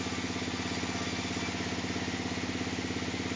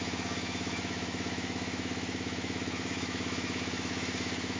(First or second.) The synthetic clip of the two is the second